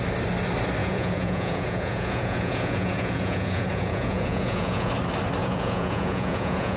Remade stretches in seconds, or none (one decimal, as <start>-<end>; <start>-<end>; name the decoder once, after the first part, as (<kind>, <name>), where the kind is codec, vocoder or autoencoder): 0.8-4.9 (vocoder, Vocos); 5.4-6.8